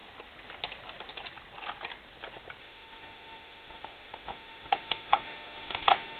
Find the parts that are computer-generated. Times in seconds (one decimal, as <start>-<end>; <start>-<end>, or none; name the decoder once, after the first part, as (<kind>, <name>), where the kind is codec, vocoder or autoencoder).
2.6-6.2 (autoencoder, DAC-VAE)